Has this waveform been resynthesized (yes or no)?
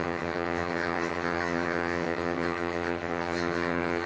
yes